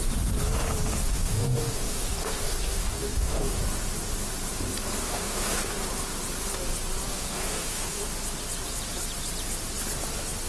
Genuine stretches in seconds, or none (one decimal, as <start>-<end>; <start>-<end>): 0.0-1.1; 3.6-5.0; 5.8-7.1; 8.0-10.5